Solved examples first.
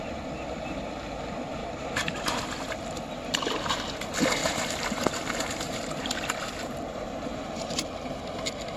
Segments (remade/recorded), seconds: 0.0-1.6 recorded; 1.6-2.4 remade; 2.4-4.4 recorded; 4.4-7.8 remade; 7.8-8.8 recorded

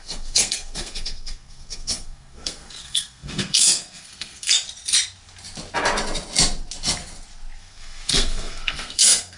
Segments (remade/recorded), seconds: 0.0-4.5 remade; 4.5-7.6 recorded; 7.6-9.4 remade

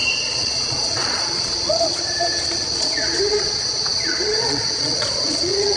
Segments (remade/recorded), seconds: 0.0-5.8 remade

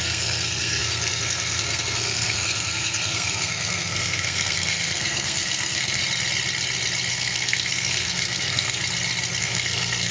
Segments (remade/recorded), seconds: 0.0-6.0 remade; 6.0-7.1 recorded; 7.1-8.8 remade; 8.8-9.4 recorded; 9.4-10.1 remade

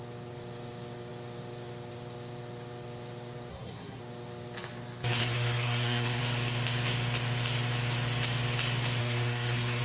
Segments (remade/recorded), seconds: 0.0-3.5 recorded; 3.5-4.0 remade; 4.0-5.2 recorded; 5.2-6.2 remade; 6.2-9.0 recorded; 9.0-9.8 remade

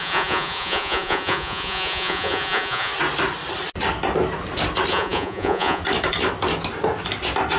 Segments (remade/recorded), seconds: 0.0-2.9 remade; 2.9-4.9 recorded; 4.9-5.8 remade; 5.8-7.6 recorded

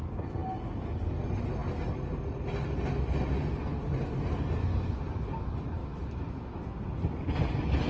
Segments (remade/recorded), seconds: 0.0-5.8 recorded; 5.8-6.6 remade; 6.6-7.9 recorded

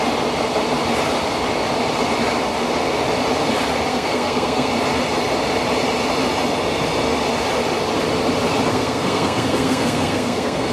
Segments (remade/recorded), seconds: 0.0-3.9 recorded; 3.9-4.7 remade; 4.7-8.7 recorded; 8.7-10.7 remade